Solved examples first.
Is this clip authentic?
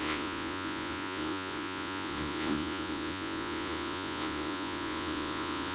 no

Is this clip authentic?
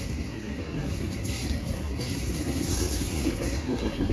no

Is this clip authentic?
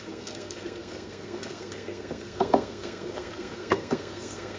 no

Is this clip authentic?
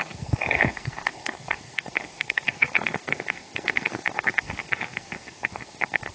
no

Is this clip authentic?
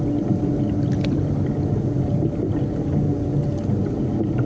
yes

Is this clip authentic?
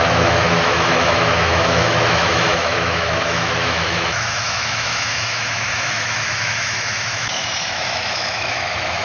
no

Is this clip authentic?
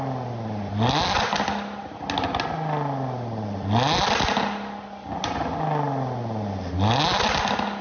yes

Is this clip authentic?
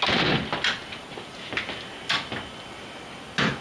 yes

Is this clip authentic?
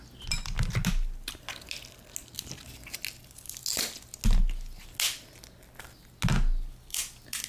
yes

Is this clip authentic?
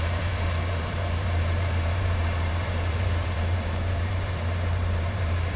no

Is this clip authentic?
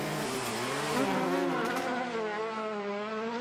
yes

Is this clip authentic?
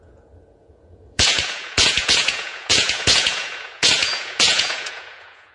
no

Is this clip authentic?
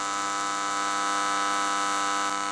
yes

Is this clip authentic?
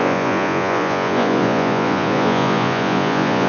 no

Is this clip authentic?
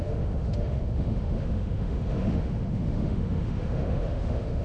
no